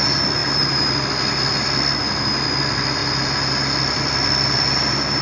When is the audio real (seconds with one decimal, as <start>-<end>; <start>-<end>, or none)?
0.0-0.4; 1.1-3.0; 4.8-5.2